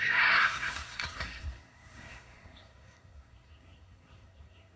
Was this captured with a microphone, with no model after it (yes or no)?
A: no